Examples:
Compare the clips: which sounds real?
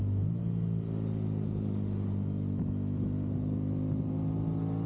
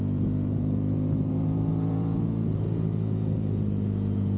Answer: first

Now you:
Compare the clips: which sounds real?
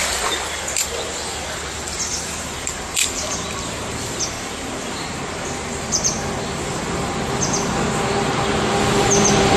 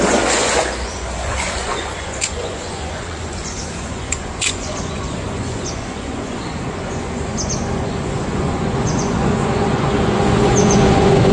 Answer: first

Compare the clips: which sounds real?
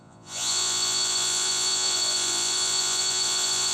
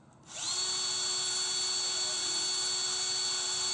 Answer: second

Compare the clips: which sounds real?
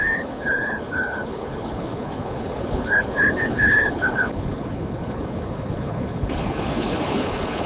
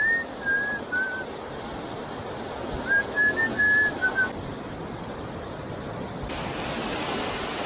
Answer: second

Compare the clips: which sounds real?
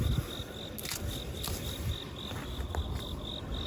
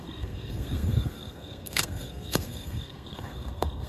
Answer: first